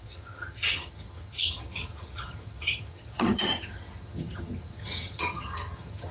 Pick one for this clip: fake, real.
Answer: fake